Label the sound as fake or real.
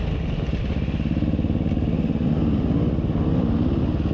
real